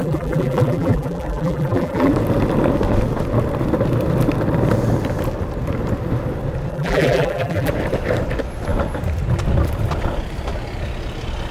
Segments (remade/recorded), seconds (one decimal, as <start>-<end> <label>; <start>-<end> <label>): 0.0-2.1 remade; 2.1-6.7 recorded; 6.7-7.7 remade; 7.7-11.5 recorded